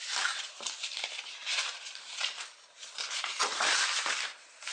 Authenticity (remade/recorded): remade